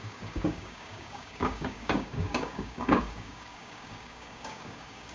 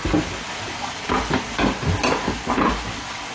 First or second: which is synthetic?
first